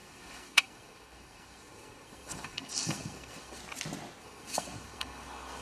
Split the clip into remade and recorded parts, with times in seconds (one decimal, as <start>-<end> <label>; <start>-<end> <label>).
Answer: 0.0-3.6 remade; 3.6-4.2 recorded; 4.2-5.6 remade